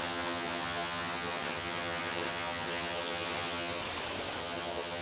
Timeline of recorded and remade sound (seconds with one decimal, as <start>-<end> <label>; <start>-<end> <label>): 0.0-3.8 remade; 3.8-4.4 recorded; 4.4-5.0 remade